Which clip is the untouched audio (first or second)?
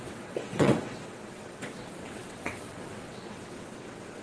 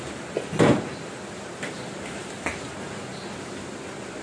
second